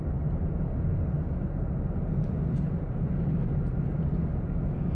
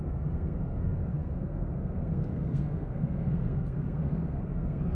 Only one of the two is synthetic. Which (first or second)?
second